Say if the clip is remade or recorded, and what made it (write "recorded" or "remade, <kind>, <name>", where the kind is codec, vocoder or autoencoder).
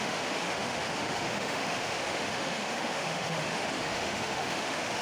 remade, autoencoder, DAC-VAE